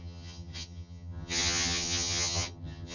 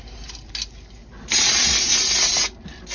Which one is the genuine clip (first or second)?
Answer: second